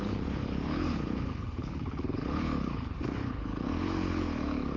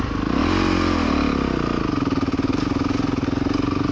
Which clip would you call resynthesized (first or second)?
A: first